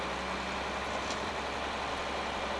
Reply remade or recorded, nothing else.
recorded